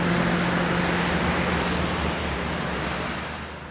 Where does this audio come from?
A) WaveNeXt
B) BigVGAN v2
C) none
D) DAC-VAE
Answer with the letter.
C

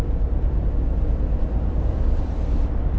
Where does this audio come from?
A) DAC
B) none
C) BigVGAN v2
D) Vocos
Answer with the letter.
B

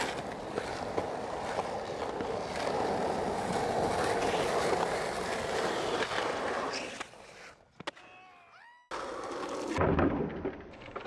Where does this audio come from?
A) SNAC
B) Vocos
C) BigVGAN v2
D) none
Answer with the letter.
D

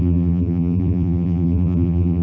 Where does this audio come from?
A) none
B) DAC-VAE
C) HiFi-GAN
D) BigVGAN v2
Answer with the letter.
D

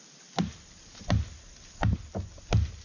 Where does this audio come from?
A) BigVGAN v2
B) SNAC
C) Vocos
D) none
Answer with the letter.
D